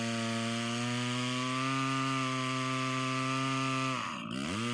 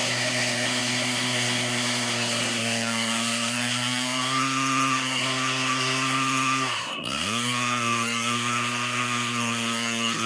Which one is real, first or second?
first